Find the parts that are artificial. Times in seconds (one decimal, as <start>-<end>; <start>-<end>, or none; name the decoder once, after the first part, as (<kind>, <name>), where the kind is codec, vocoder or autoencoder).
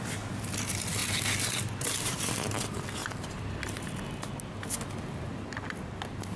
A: none